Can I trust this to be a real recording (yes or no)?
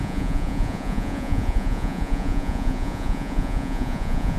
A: no